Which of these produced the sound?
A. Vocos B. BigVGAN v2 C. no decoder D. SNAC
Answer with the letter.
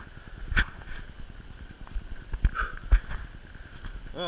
C